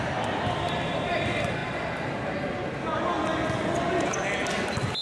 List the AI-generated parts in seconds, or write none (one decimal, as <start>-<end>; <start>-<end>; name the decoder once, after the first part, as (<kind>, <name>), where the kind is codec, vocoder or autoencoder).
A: none